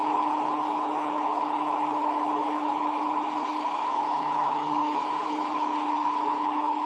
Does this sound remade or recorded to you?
remade